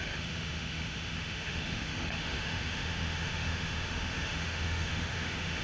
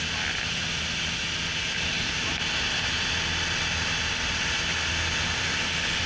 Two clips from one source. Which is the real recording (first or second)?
second